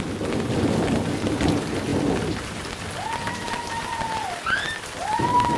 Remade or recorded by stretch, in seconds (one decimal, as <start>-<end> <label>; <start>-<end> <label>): 0.0-5.6 remade